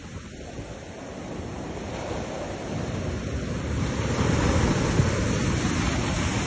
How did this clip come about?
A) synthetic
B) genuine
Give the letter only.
B